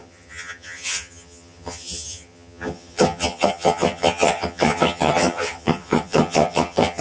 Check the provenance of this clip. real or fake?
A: fake